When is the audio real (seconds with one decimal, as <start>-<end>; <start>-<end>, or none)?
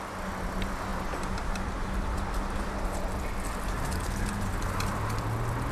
0.0-5.7